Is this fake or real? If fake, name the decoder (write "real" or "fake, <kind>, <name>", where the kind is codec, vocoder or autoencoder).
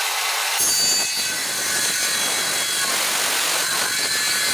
real